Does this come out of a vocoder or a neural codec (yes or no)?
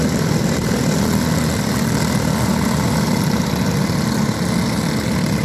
no